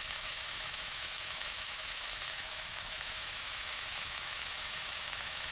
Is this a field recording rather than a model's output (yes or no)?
no